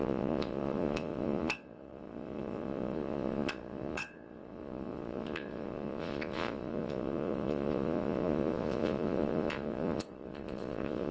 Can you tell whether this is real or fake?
fake